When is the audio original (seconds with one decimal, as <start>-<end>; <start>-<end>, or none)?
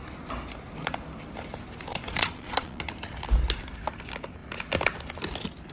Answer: 0.0-1.9; 2.8-5.7